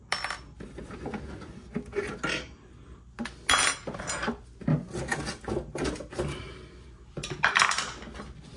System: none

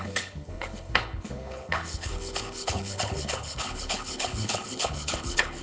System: codec, HILCodec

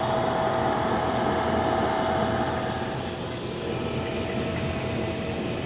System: none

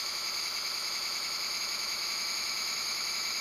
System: autoencoder, DAC-VAE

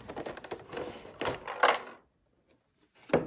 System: none